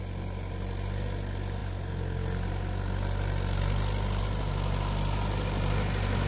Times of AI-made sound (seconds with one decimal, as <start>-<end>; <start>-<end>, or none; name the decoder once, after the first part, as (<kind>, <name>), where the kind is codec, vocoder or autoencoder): none